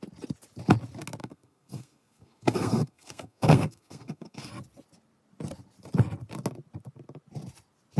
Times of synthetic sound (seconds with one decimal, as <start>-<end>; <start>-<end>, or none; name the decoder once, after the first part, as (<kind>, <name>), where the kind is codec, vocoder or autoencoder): 1.2-4.5 (codec, SNAC)